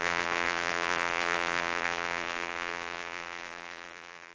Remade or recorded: remade